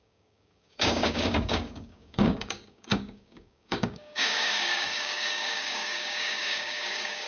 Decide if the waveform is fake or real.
fake